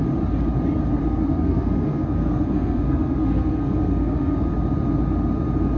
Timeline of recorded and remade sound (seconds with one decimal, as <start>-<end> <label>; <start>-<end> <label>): 0.0-1.0 recorded; 1.0-4.5 remade; 4.5-5.8 recorded

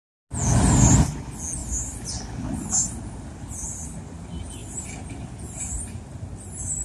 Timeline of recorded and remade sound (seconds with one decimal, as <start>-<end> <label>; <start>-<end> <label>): 0.0-6.8 recorded

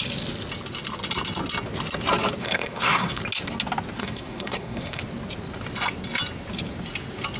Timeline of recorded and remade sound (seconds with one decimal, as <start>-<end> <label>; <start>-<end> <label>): 0.0-2.4 recorded; 2.4-3.2 remade; 3.2-4.0 recorded; 4.0-5.0 remade; 5.0-7.4 recorded

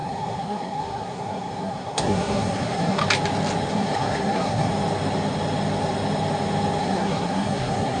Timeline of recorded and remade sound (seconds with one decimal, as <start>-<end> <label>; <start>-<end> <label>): 0.0-3.0 remade; 3.0-3.7 recorded; 3.7-4.7 remade; 4.7-6.8 recorded; 6.8-8.0 remade

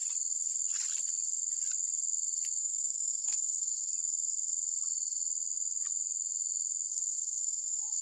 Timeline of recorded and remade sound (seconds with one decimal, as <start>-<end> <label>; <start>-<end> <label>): 0.0-2.6 recorded; 2.6-3.9 remade; 3.9-6.9 recorded; 6.9-8.0 remade